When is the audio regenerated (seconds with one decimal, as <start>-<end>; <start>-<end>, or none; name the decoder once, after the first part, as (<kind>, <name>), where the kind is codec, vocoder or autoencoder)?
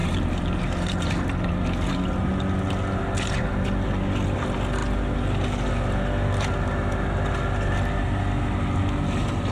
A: 0.0-1.9 (vocoder, BigVGAN v2)